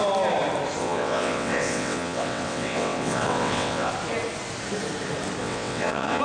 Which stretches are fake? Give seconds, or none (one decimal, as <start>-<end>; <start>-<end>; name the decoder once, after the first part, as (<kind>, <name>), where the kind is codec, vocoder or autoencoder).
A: 0.8-3.9 (vocoder, WaveNeXt); 5.4-6.2